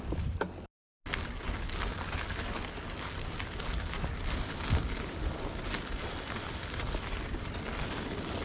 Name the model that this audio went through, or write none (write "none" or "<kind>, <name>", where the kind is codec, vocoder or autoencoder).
none